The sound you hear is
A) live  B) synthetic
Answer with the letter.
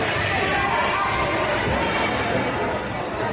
A